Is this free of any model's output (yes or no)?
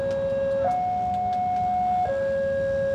yes